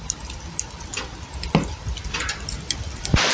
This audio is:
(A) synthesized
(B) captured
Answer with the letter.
B